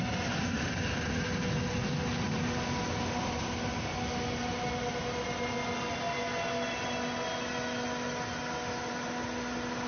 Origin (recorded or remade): recorded